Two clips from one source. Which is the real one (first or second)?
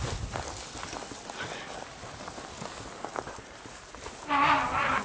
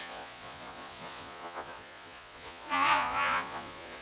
first